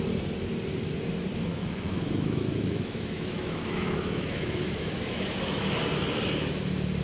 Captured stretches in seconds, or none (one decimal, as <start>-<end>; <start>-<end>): 0.0-1.5; 5.7-7.0